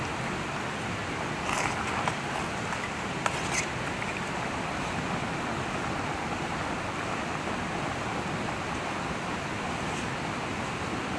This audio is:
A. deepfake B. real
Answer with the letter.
B